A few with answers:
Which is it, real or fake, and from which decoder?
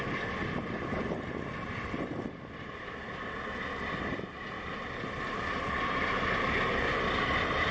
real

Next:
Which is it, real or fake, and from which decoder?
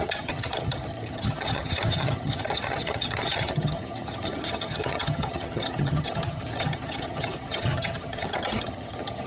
fake, vocoder, HiFi-GAN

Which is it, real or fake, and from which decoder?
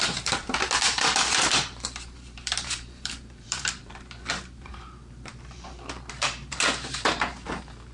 fake, vocoder, BigVGAN v2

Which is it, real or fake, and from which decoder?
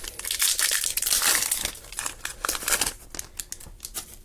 real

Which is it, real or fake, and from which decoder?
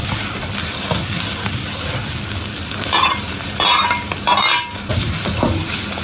fake, vocoder, BigVGAN v2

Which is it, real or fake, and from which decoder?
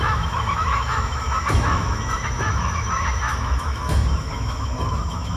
fake, autoencoder, DAC-VAE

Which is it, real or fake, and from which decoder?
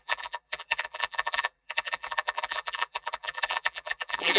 fake, vocoder, BigVGAN v2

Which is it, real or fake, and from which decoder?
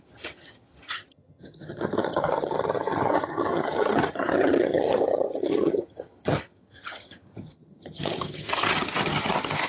fake, vocoder, HiFi-GAN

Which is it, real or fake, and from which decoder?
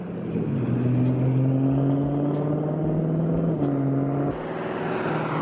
real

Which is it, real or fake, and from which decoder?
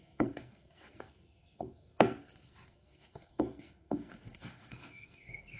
fake, codec, SNAC